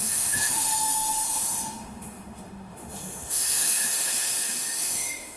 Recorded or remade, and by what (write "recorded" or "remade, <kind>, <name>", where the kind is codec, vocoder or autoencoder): remade, autoencoder, DAC-VAE